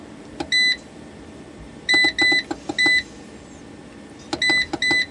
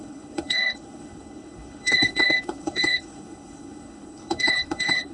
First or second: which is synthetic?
second